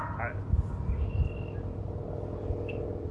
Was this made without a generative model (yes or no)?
yes